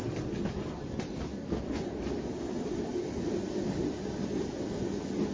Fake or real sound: real